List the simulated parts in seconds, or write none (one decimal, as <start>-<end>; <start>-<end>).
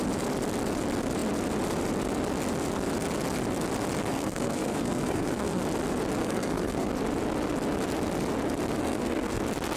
4.1-5.6; 6.2-6.9; 8.8-9.4